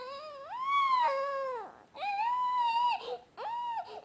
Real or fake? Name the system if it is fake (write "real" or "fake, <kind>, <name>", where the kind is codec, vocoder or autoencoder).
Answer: real